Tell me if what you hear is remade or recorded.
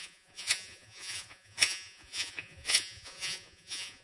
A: remade